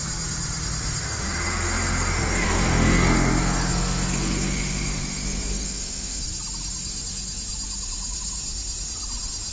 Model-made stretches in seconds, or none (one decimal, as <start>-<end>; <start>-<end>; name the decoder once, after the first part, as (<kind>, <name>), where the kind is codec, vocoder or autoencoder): 1.0-6.2 (autoencoder, DAC-VAE)